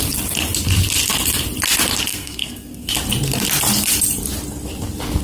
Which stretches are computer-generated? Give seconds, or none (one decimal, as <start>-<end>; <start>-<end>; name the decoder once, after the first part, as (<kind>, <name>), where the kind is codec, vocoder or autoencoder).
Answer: 2.1-2.9 (codec, SNAC)